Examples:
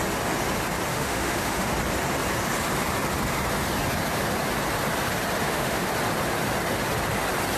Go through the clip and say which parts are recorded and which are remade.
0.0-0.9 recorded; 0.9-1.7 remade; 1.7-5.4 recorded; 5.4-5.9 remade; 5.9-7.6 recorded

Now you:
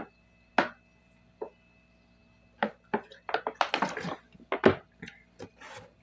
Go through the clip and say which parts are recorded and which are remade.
0.0-6.0 recorded

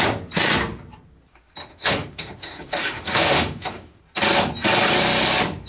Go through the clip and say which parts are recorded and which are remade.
0.0-1.7 recorded; 1.7-4.0 remade; 4.0-5.7 recorded

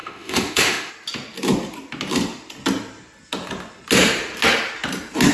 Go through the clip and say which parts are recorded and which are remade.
0.0-0.9 remade; 0.9-5.3 recorded

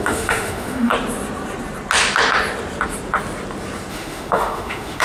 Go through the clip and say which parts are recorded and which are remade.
0.0-0.9 remade; 0.9-3.9 recorded; 3.9-5.0 remade

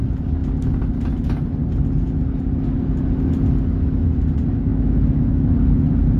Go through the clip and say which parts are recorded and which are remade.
0.0-4.7 recorded; 4.7-5.5 remade; 5.5-6.2 recorded

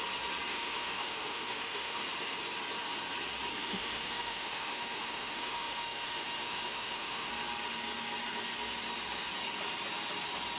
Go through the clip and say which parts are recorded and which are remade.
0.0-0.5 recorded; 0.5-2.0 remade; 2.0-3.5 recorded; 3.5-7.3 remade; 7.3-10.6 recorded